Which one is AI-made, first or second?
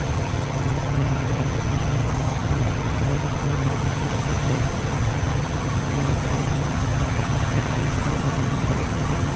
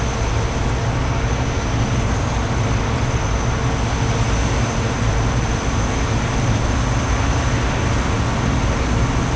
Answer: first